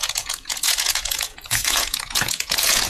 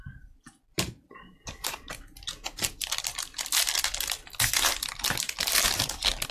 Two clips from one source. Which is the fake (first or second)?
first